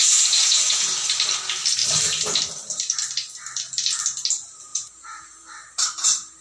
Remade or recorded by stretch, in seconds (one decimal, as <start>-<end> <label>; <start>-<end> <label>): 0.0-0.9 remade; 0.9-4.7 recorded; 4.7-5.5 remade; 5.5-6.4 recorded